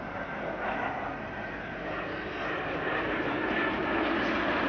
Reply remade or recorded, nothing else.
recorded